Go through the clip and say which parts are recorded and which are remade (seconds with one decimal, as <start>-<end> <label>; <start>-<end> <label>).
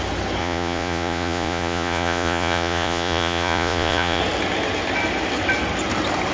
0.0-0.4 recorded; 0.4-4.2 remade; 4.2-6.3 recorded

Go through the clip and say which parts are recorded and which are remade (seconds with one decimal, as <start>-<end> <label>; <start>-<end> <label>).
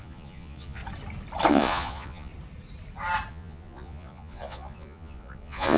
0.0-0.8 remade; 0.8-1.5 recorded; 1.5-2.3 remade; 2.3-3.3 recorded; 3.3-5.8 remade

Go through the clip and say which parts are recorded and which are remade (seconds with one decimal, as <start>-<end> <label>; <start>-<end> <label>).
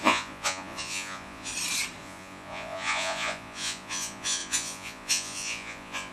0.0-1.5 remade; 1.5-2.0 recorded; 2.0-6.1 remade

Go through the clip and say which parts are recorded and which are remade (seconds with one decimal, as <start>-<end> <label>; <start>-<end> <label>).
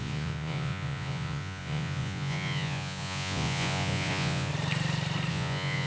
0.0-4.5 remade; 4.5-5.3 recorded; 5.3-5.9 remade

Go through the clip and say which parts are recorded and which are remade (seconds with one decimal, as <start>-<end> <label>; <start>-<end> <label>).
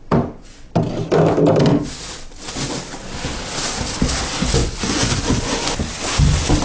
0.0-4.6 recorded; 4.6-5.7 remade; 5.7-6.6 recorded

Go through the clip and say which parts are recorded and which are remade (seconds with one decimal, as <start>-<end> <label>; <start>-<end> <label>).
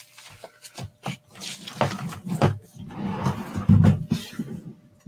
0.0-5.1 recorded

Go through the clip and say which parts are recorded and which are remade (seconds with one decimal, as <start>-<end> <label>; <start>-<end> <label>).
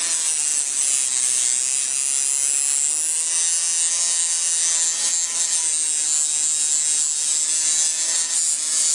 0.0-8.9 recorded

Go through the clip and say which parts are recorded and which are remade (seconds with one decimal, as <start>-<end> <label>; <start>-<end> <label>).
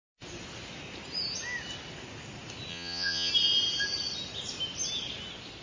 0.0-2.7 recorded; 2.7-3.3 remade; 3.3-5.6 recorded